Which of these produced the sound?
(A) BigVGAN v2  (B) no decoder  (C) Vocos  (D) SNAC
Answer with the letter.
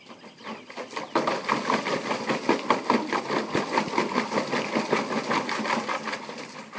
B